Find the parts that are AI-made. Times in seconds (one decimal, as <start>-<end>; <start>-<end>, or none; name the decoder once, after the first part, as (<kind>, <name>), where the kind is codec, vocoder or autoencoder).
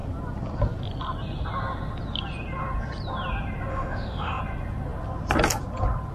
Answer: 3.7-4.4 (autoencoder, DAC-VAE)